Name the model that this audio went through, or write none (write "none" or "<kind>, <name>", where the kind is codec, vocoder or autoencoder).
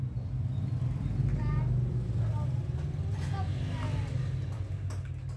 none